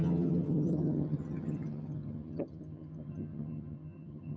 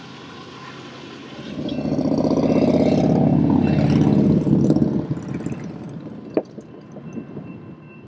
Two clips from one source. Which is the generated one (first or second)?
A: first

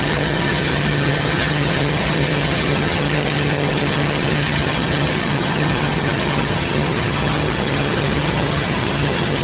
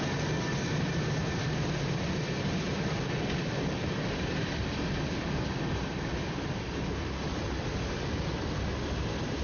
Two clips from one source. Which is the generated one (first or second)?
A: first